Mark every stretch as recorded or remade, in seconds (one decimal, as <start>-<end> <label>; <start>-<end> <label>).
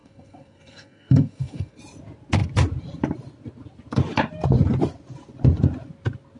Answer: 0.0-1.8 remade; 1.8-6.4 recorded